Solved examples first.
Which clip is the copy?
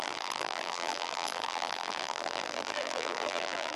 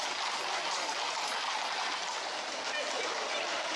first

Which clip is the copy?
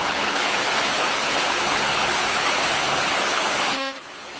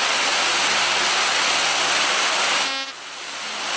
first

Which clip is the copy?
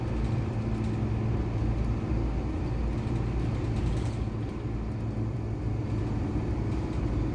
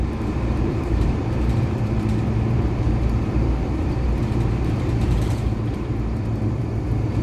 second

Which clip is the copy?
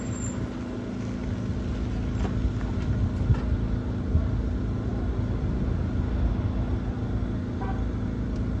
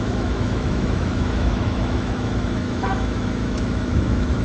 second